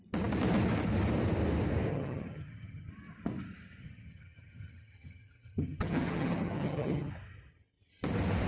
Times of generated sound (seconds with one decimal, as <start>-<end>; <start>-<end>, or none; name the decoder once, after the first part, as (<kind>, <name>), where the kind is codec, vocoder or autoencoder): 1.9-2.9 (vocoder, HiFi-GAN); 3.8-7.1